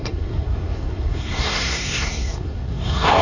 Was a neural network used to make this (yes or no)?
yes